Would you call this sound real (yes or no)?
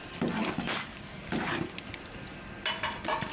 no